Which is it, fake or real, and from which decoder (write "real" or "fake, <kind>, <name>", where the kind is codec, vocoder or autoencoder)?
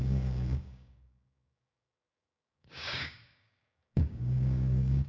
fake, codec, DAC